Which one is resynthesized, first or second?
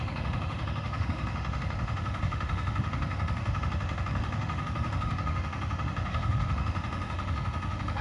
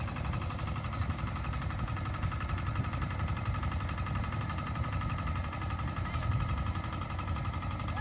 first